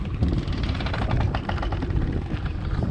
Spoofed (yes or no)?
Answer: yes